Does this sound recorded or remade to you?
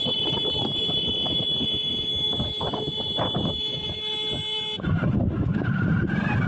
remade